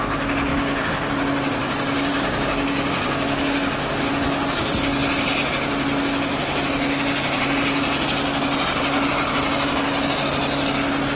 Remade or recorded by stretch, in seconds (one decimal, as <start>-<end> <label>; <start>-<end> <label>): 0.0-0.5 recorded; 0.5-1.1 remade; 1.1-2.1 recorded; 2.1-4.1 remade; 4.1-11.2 recorded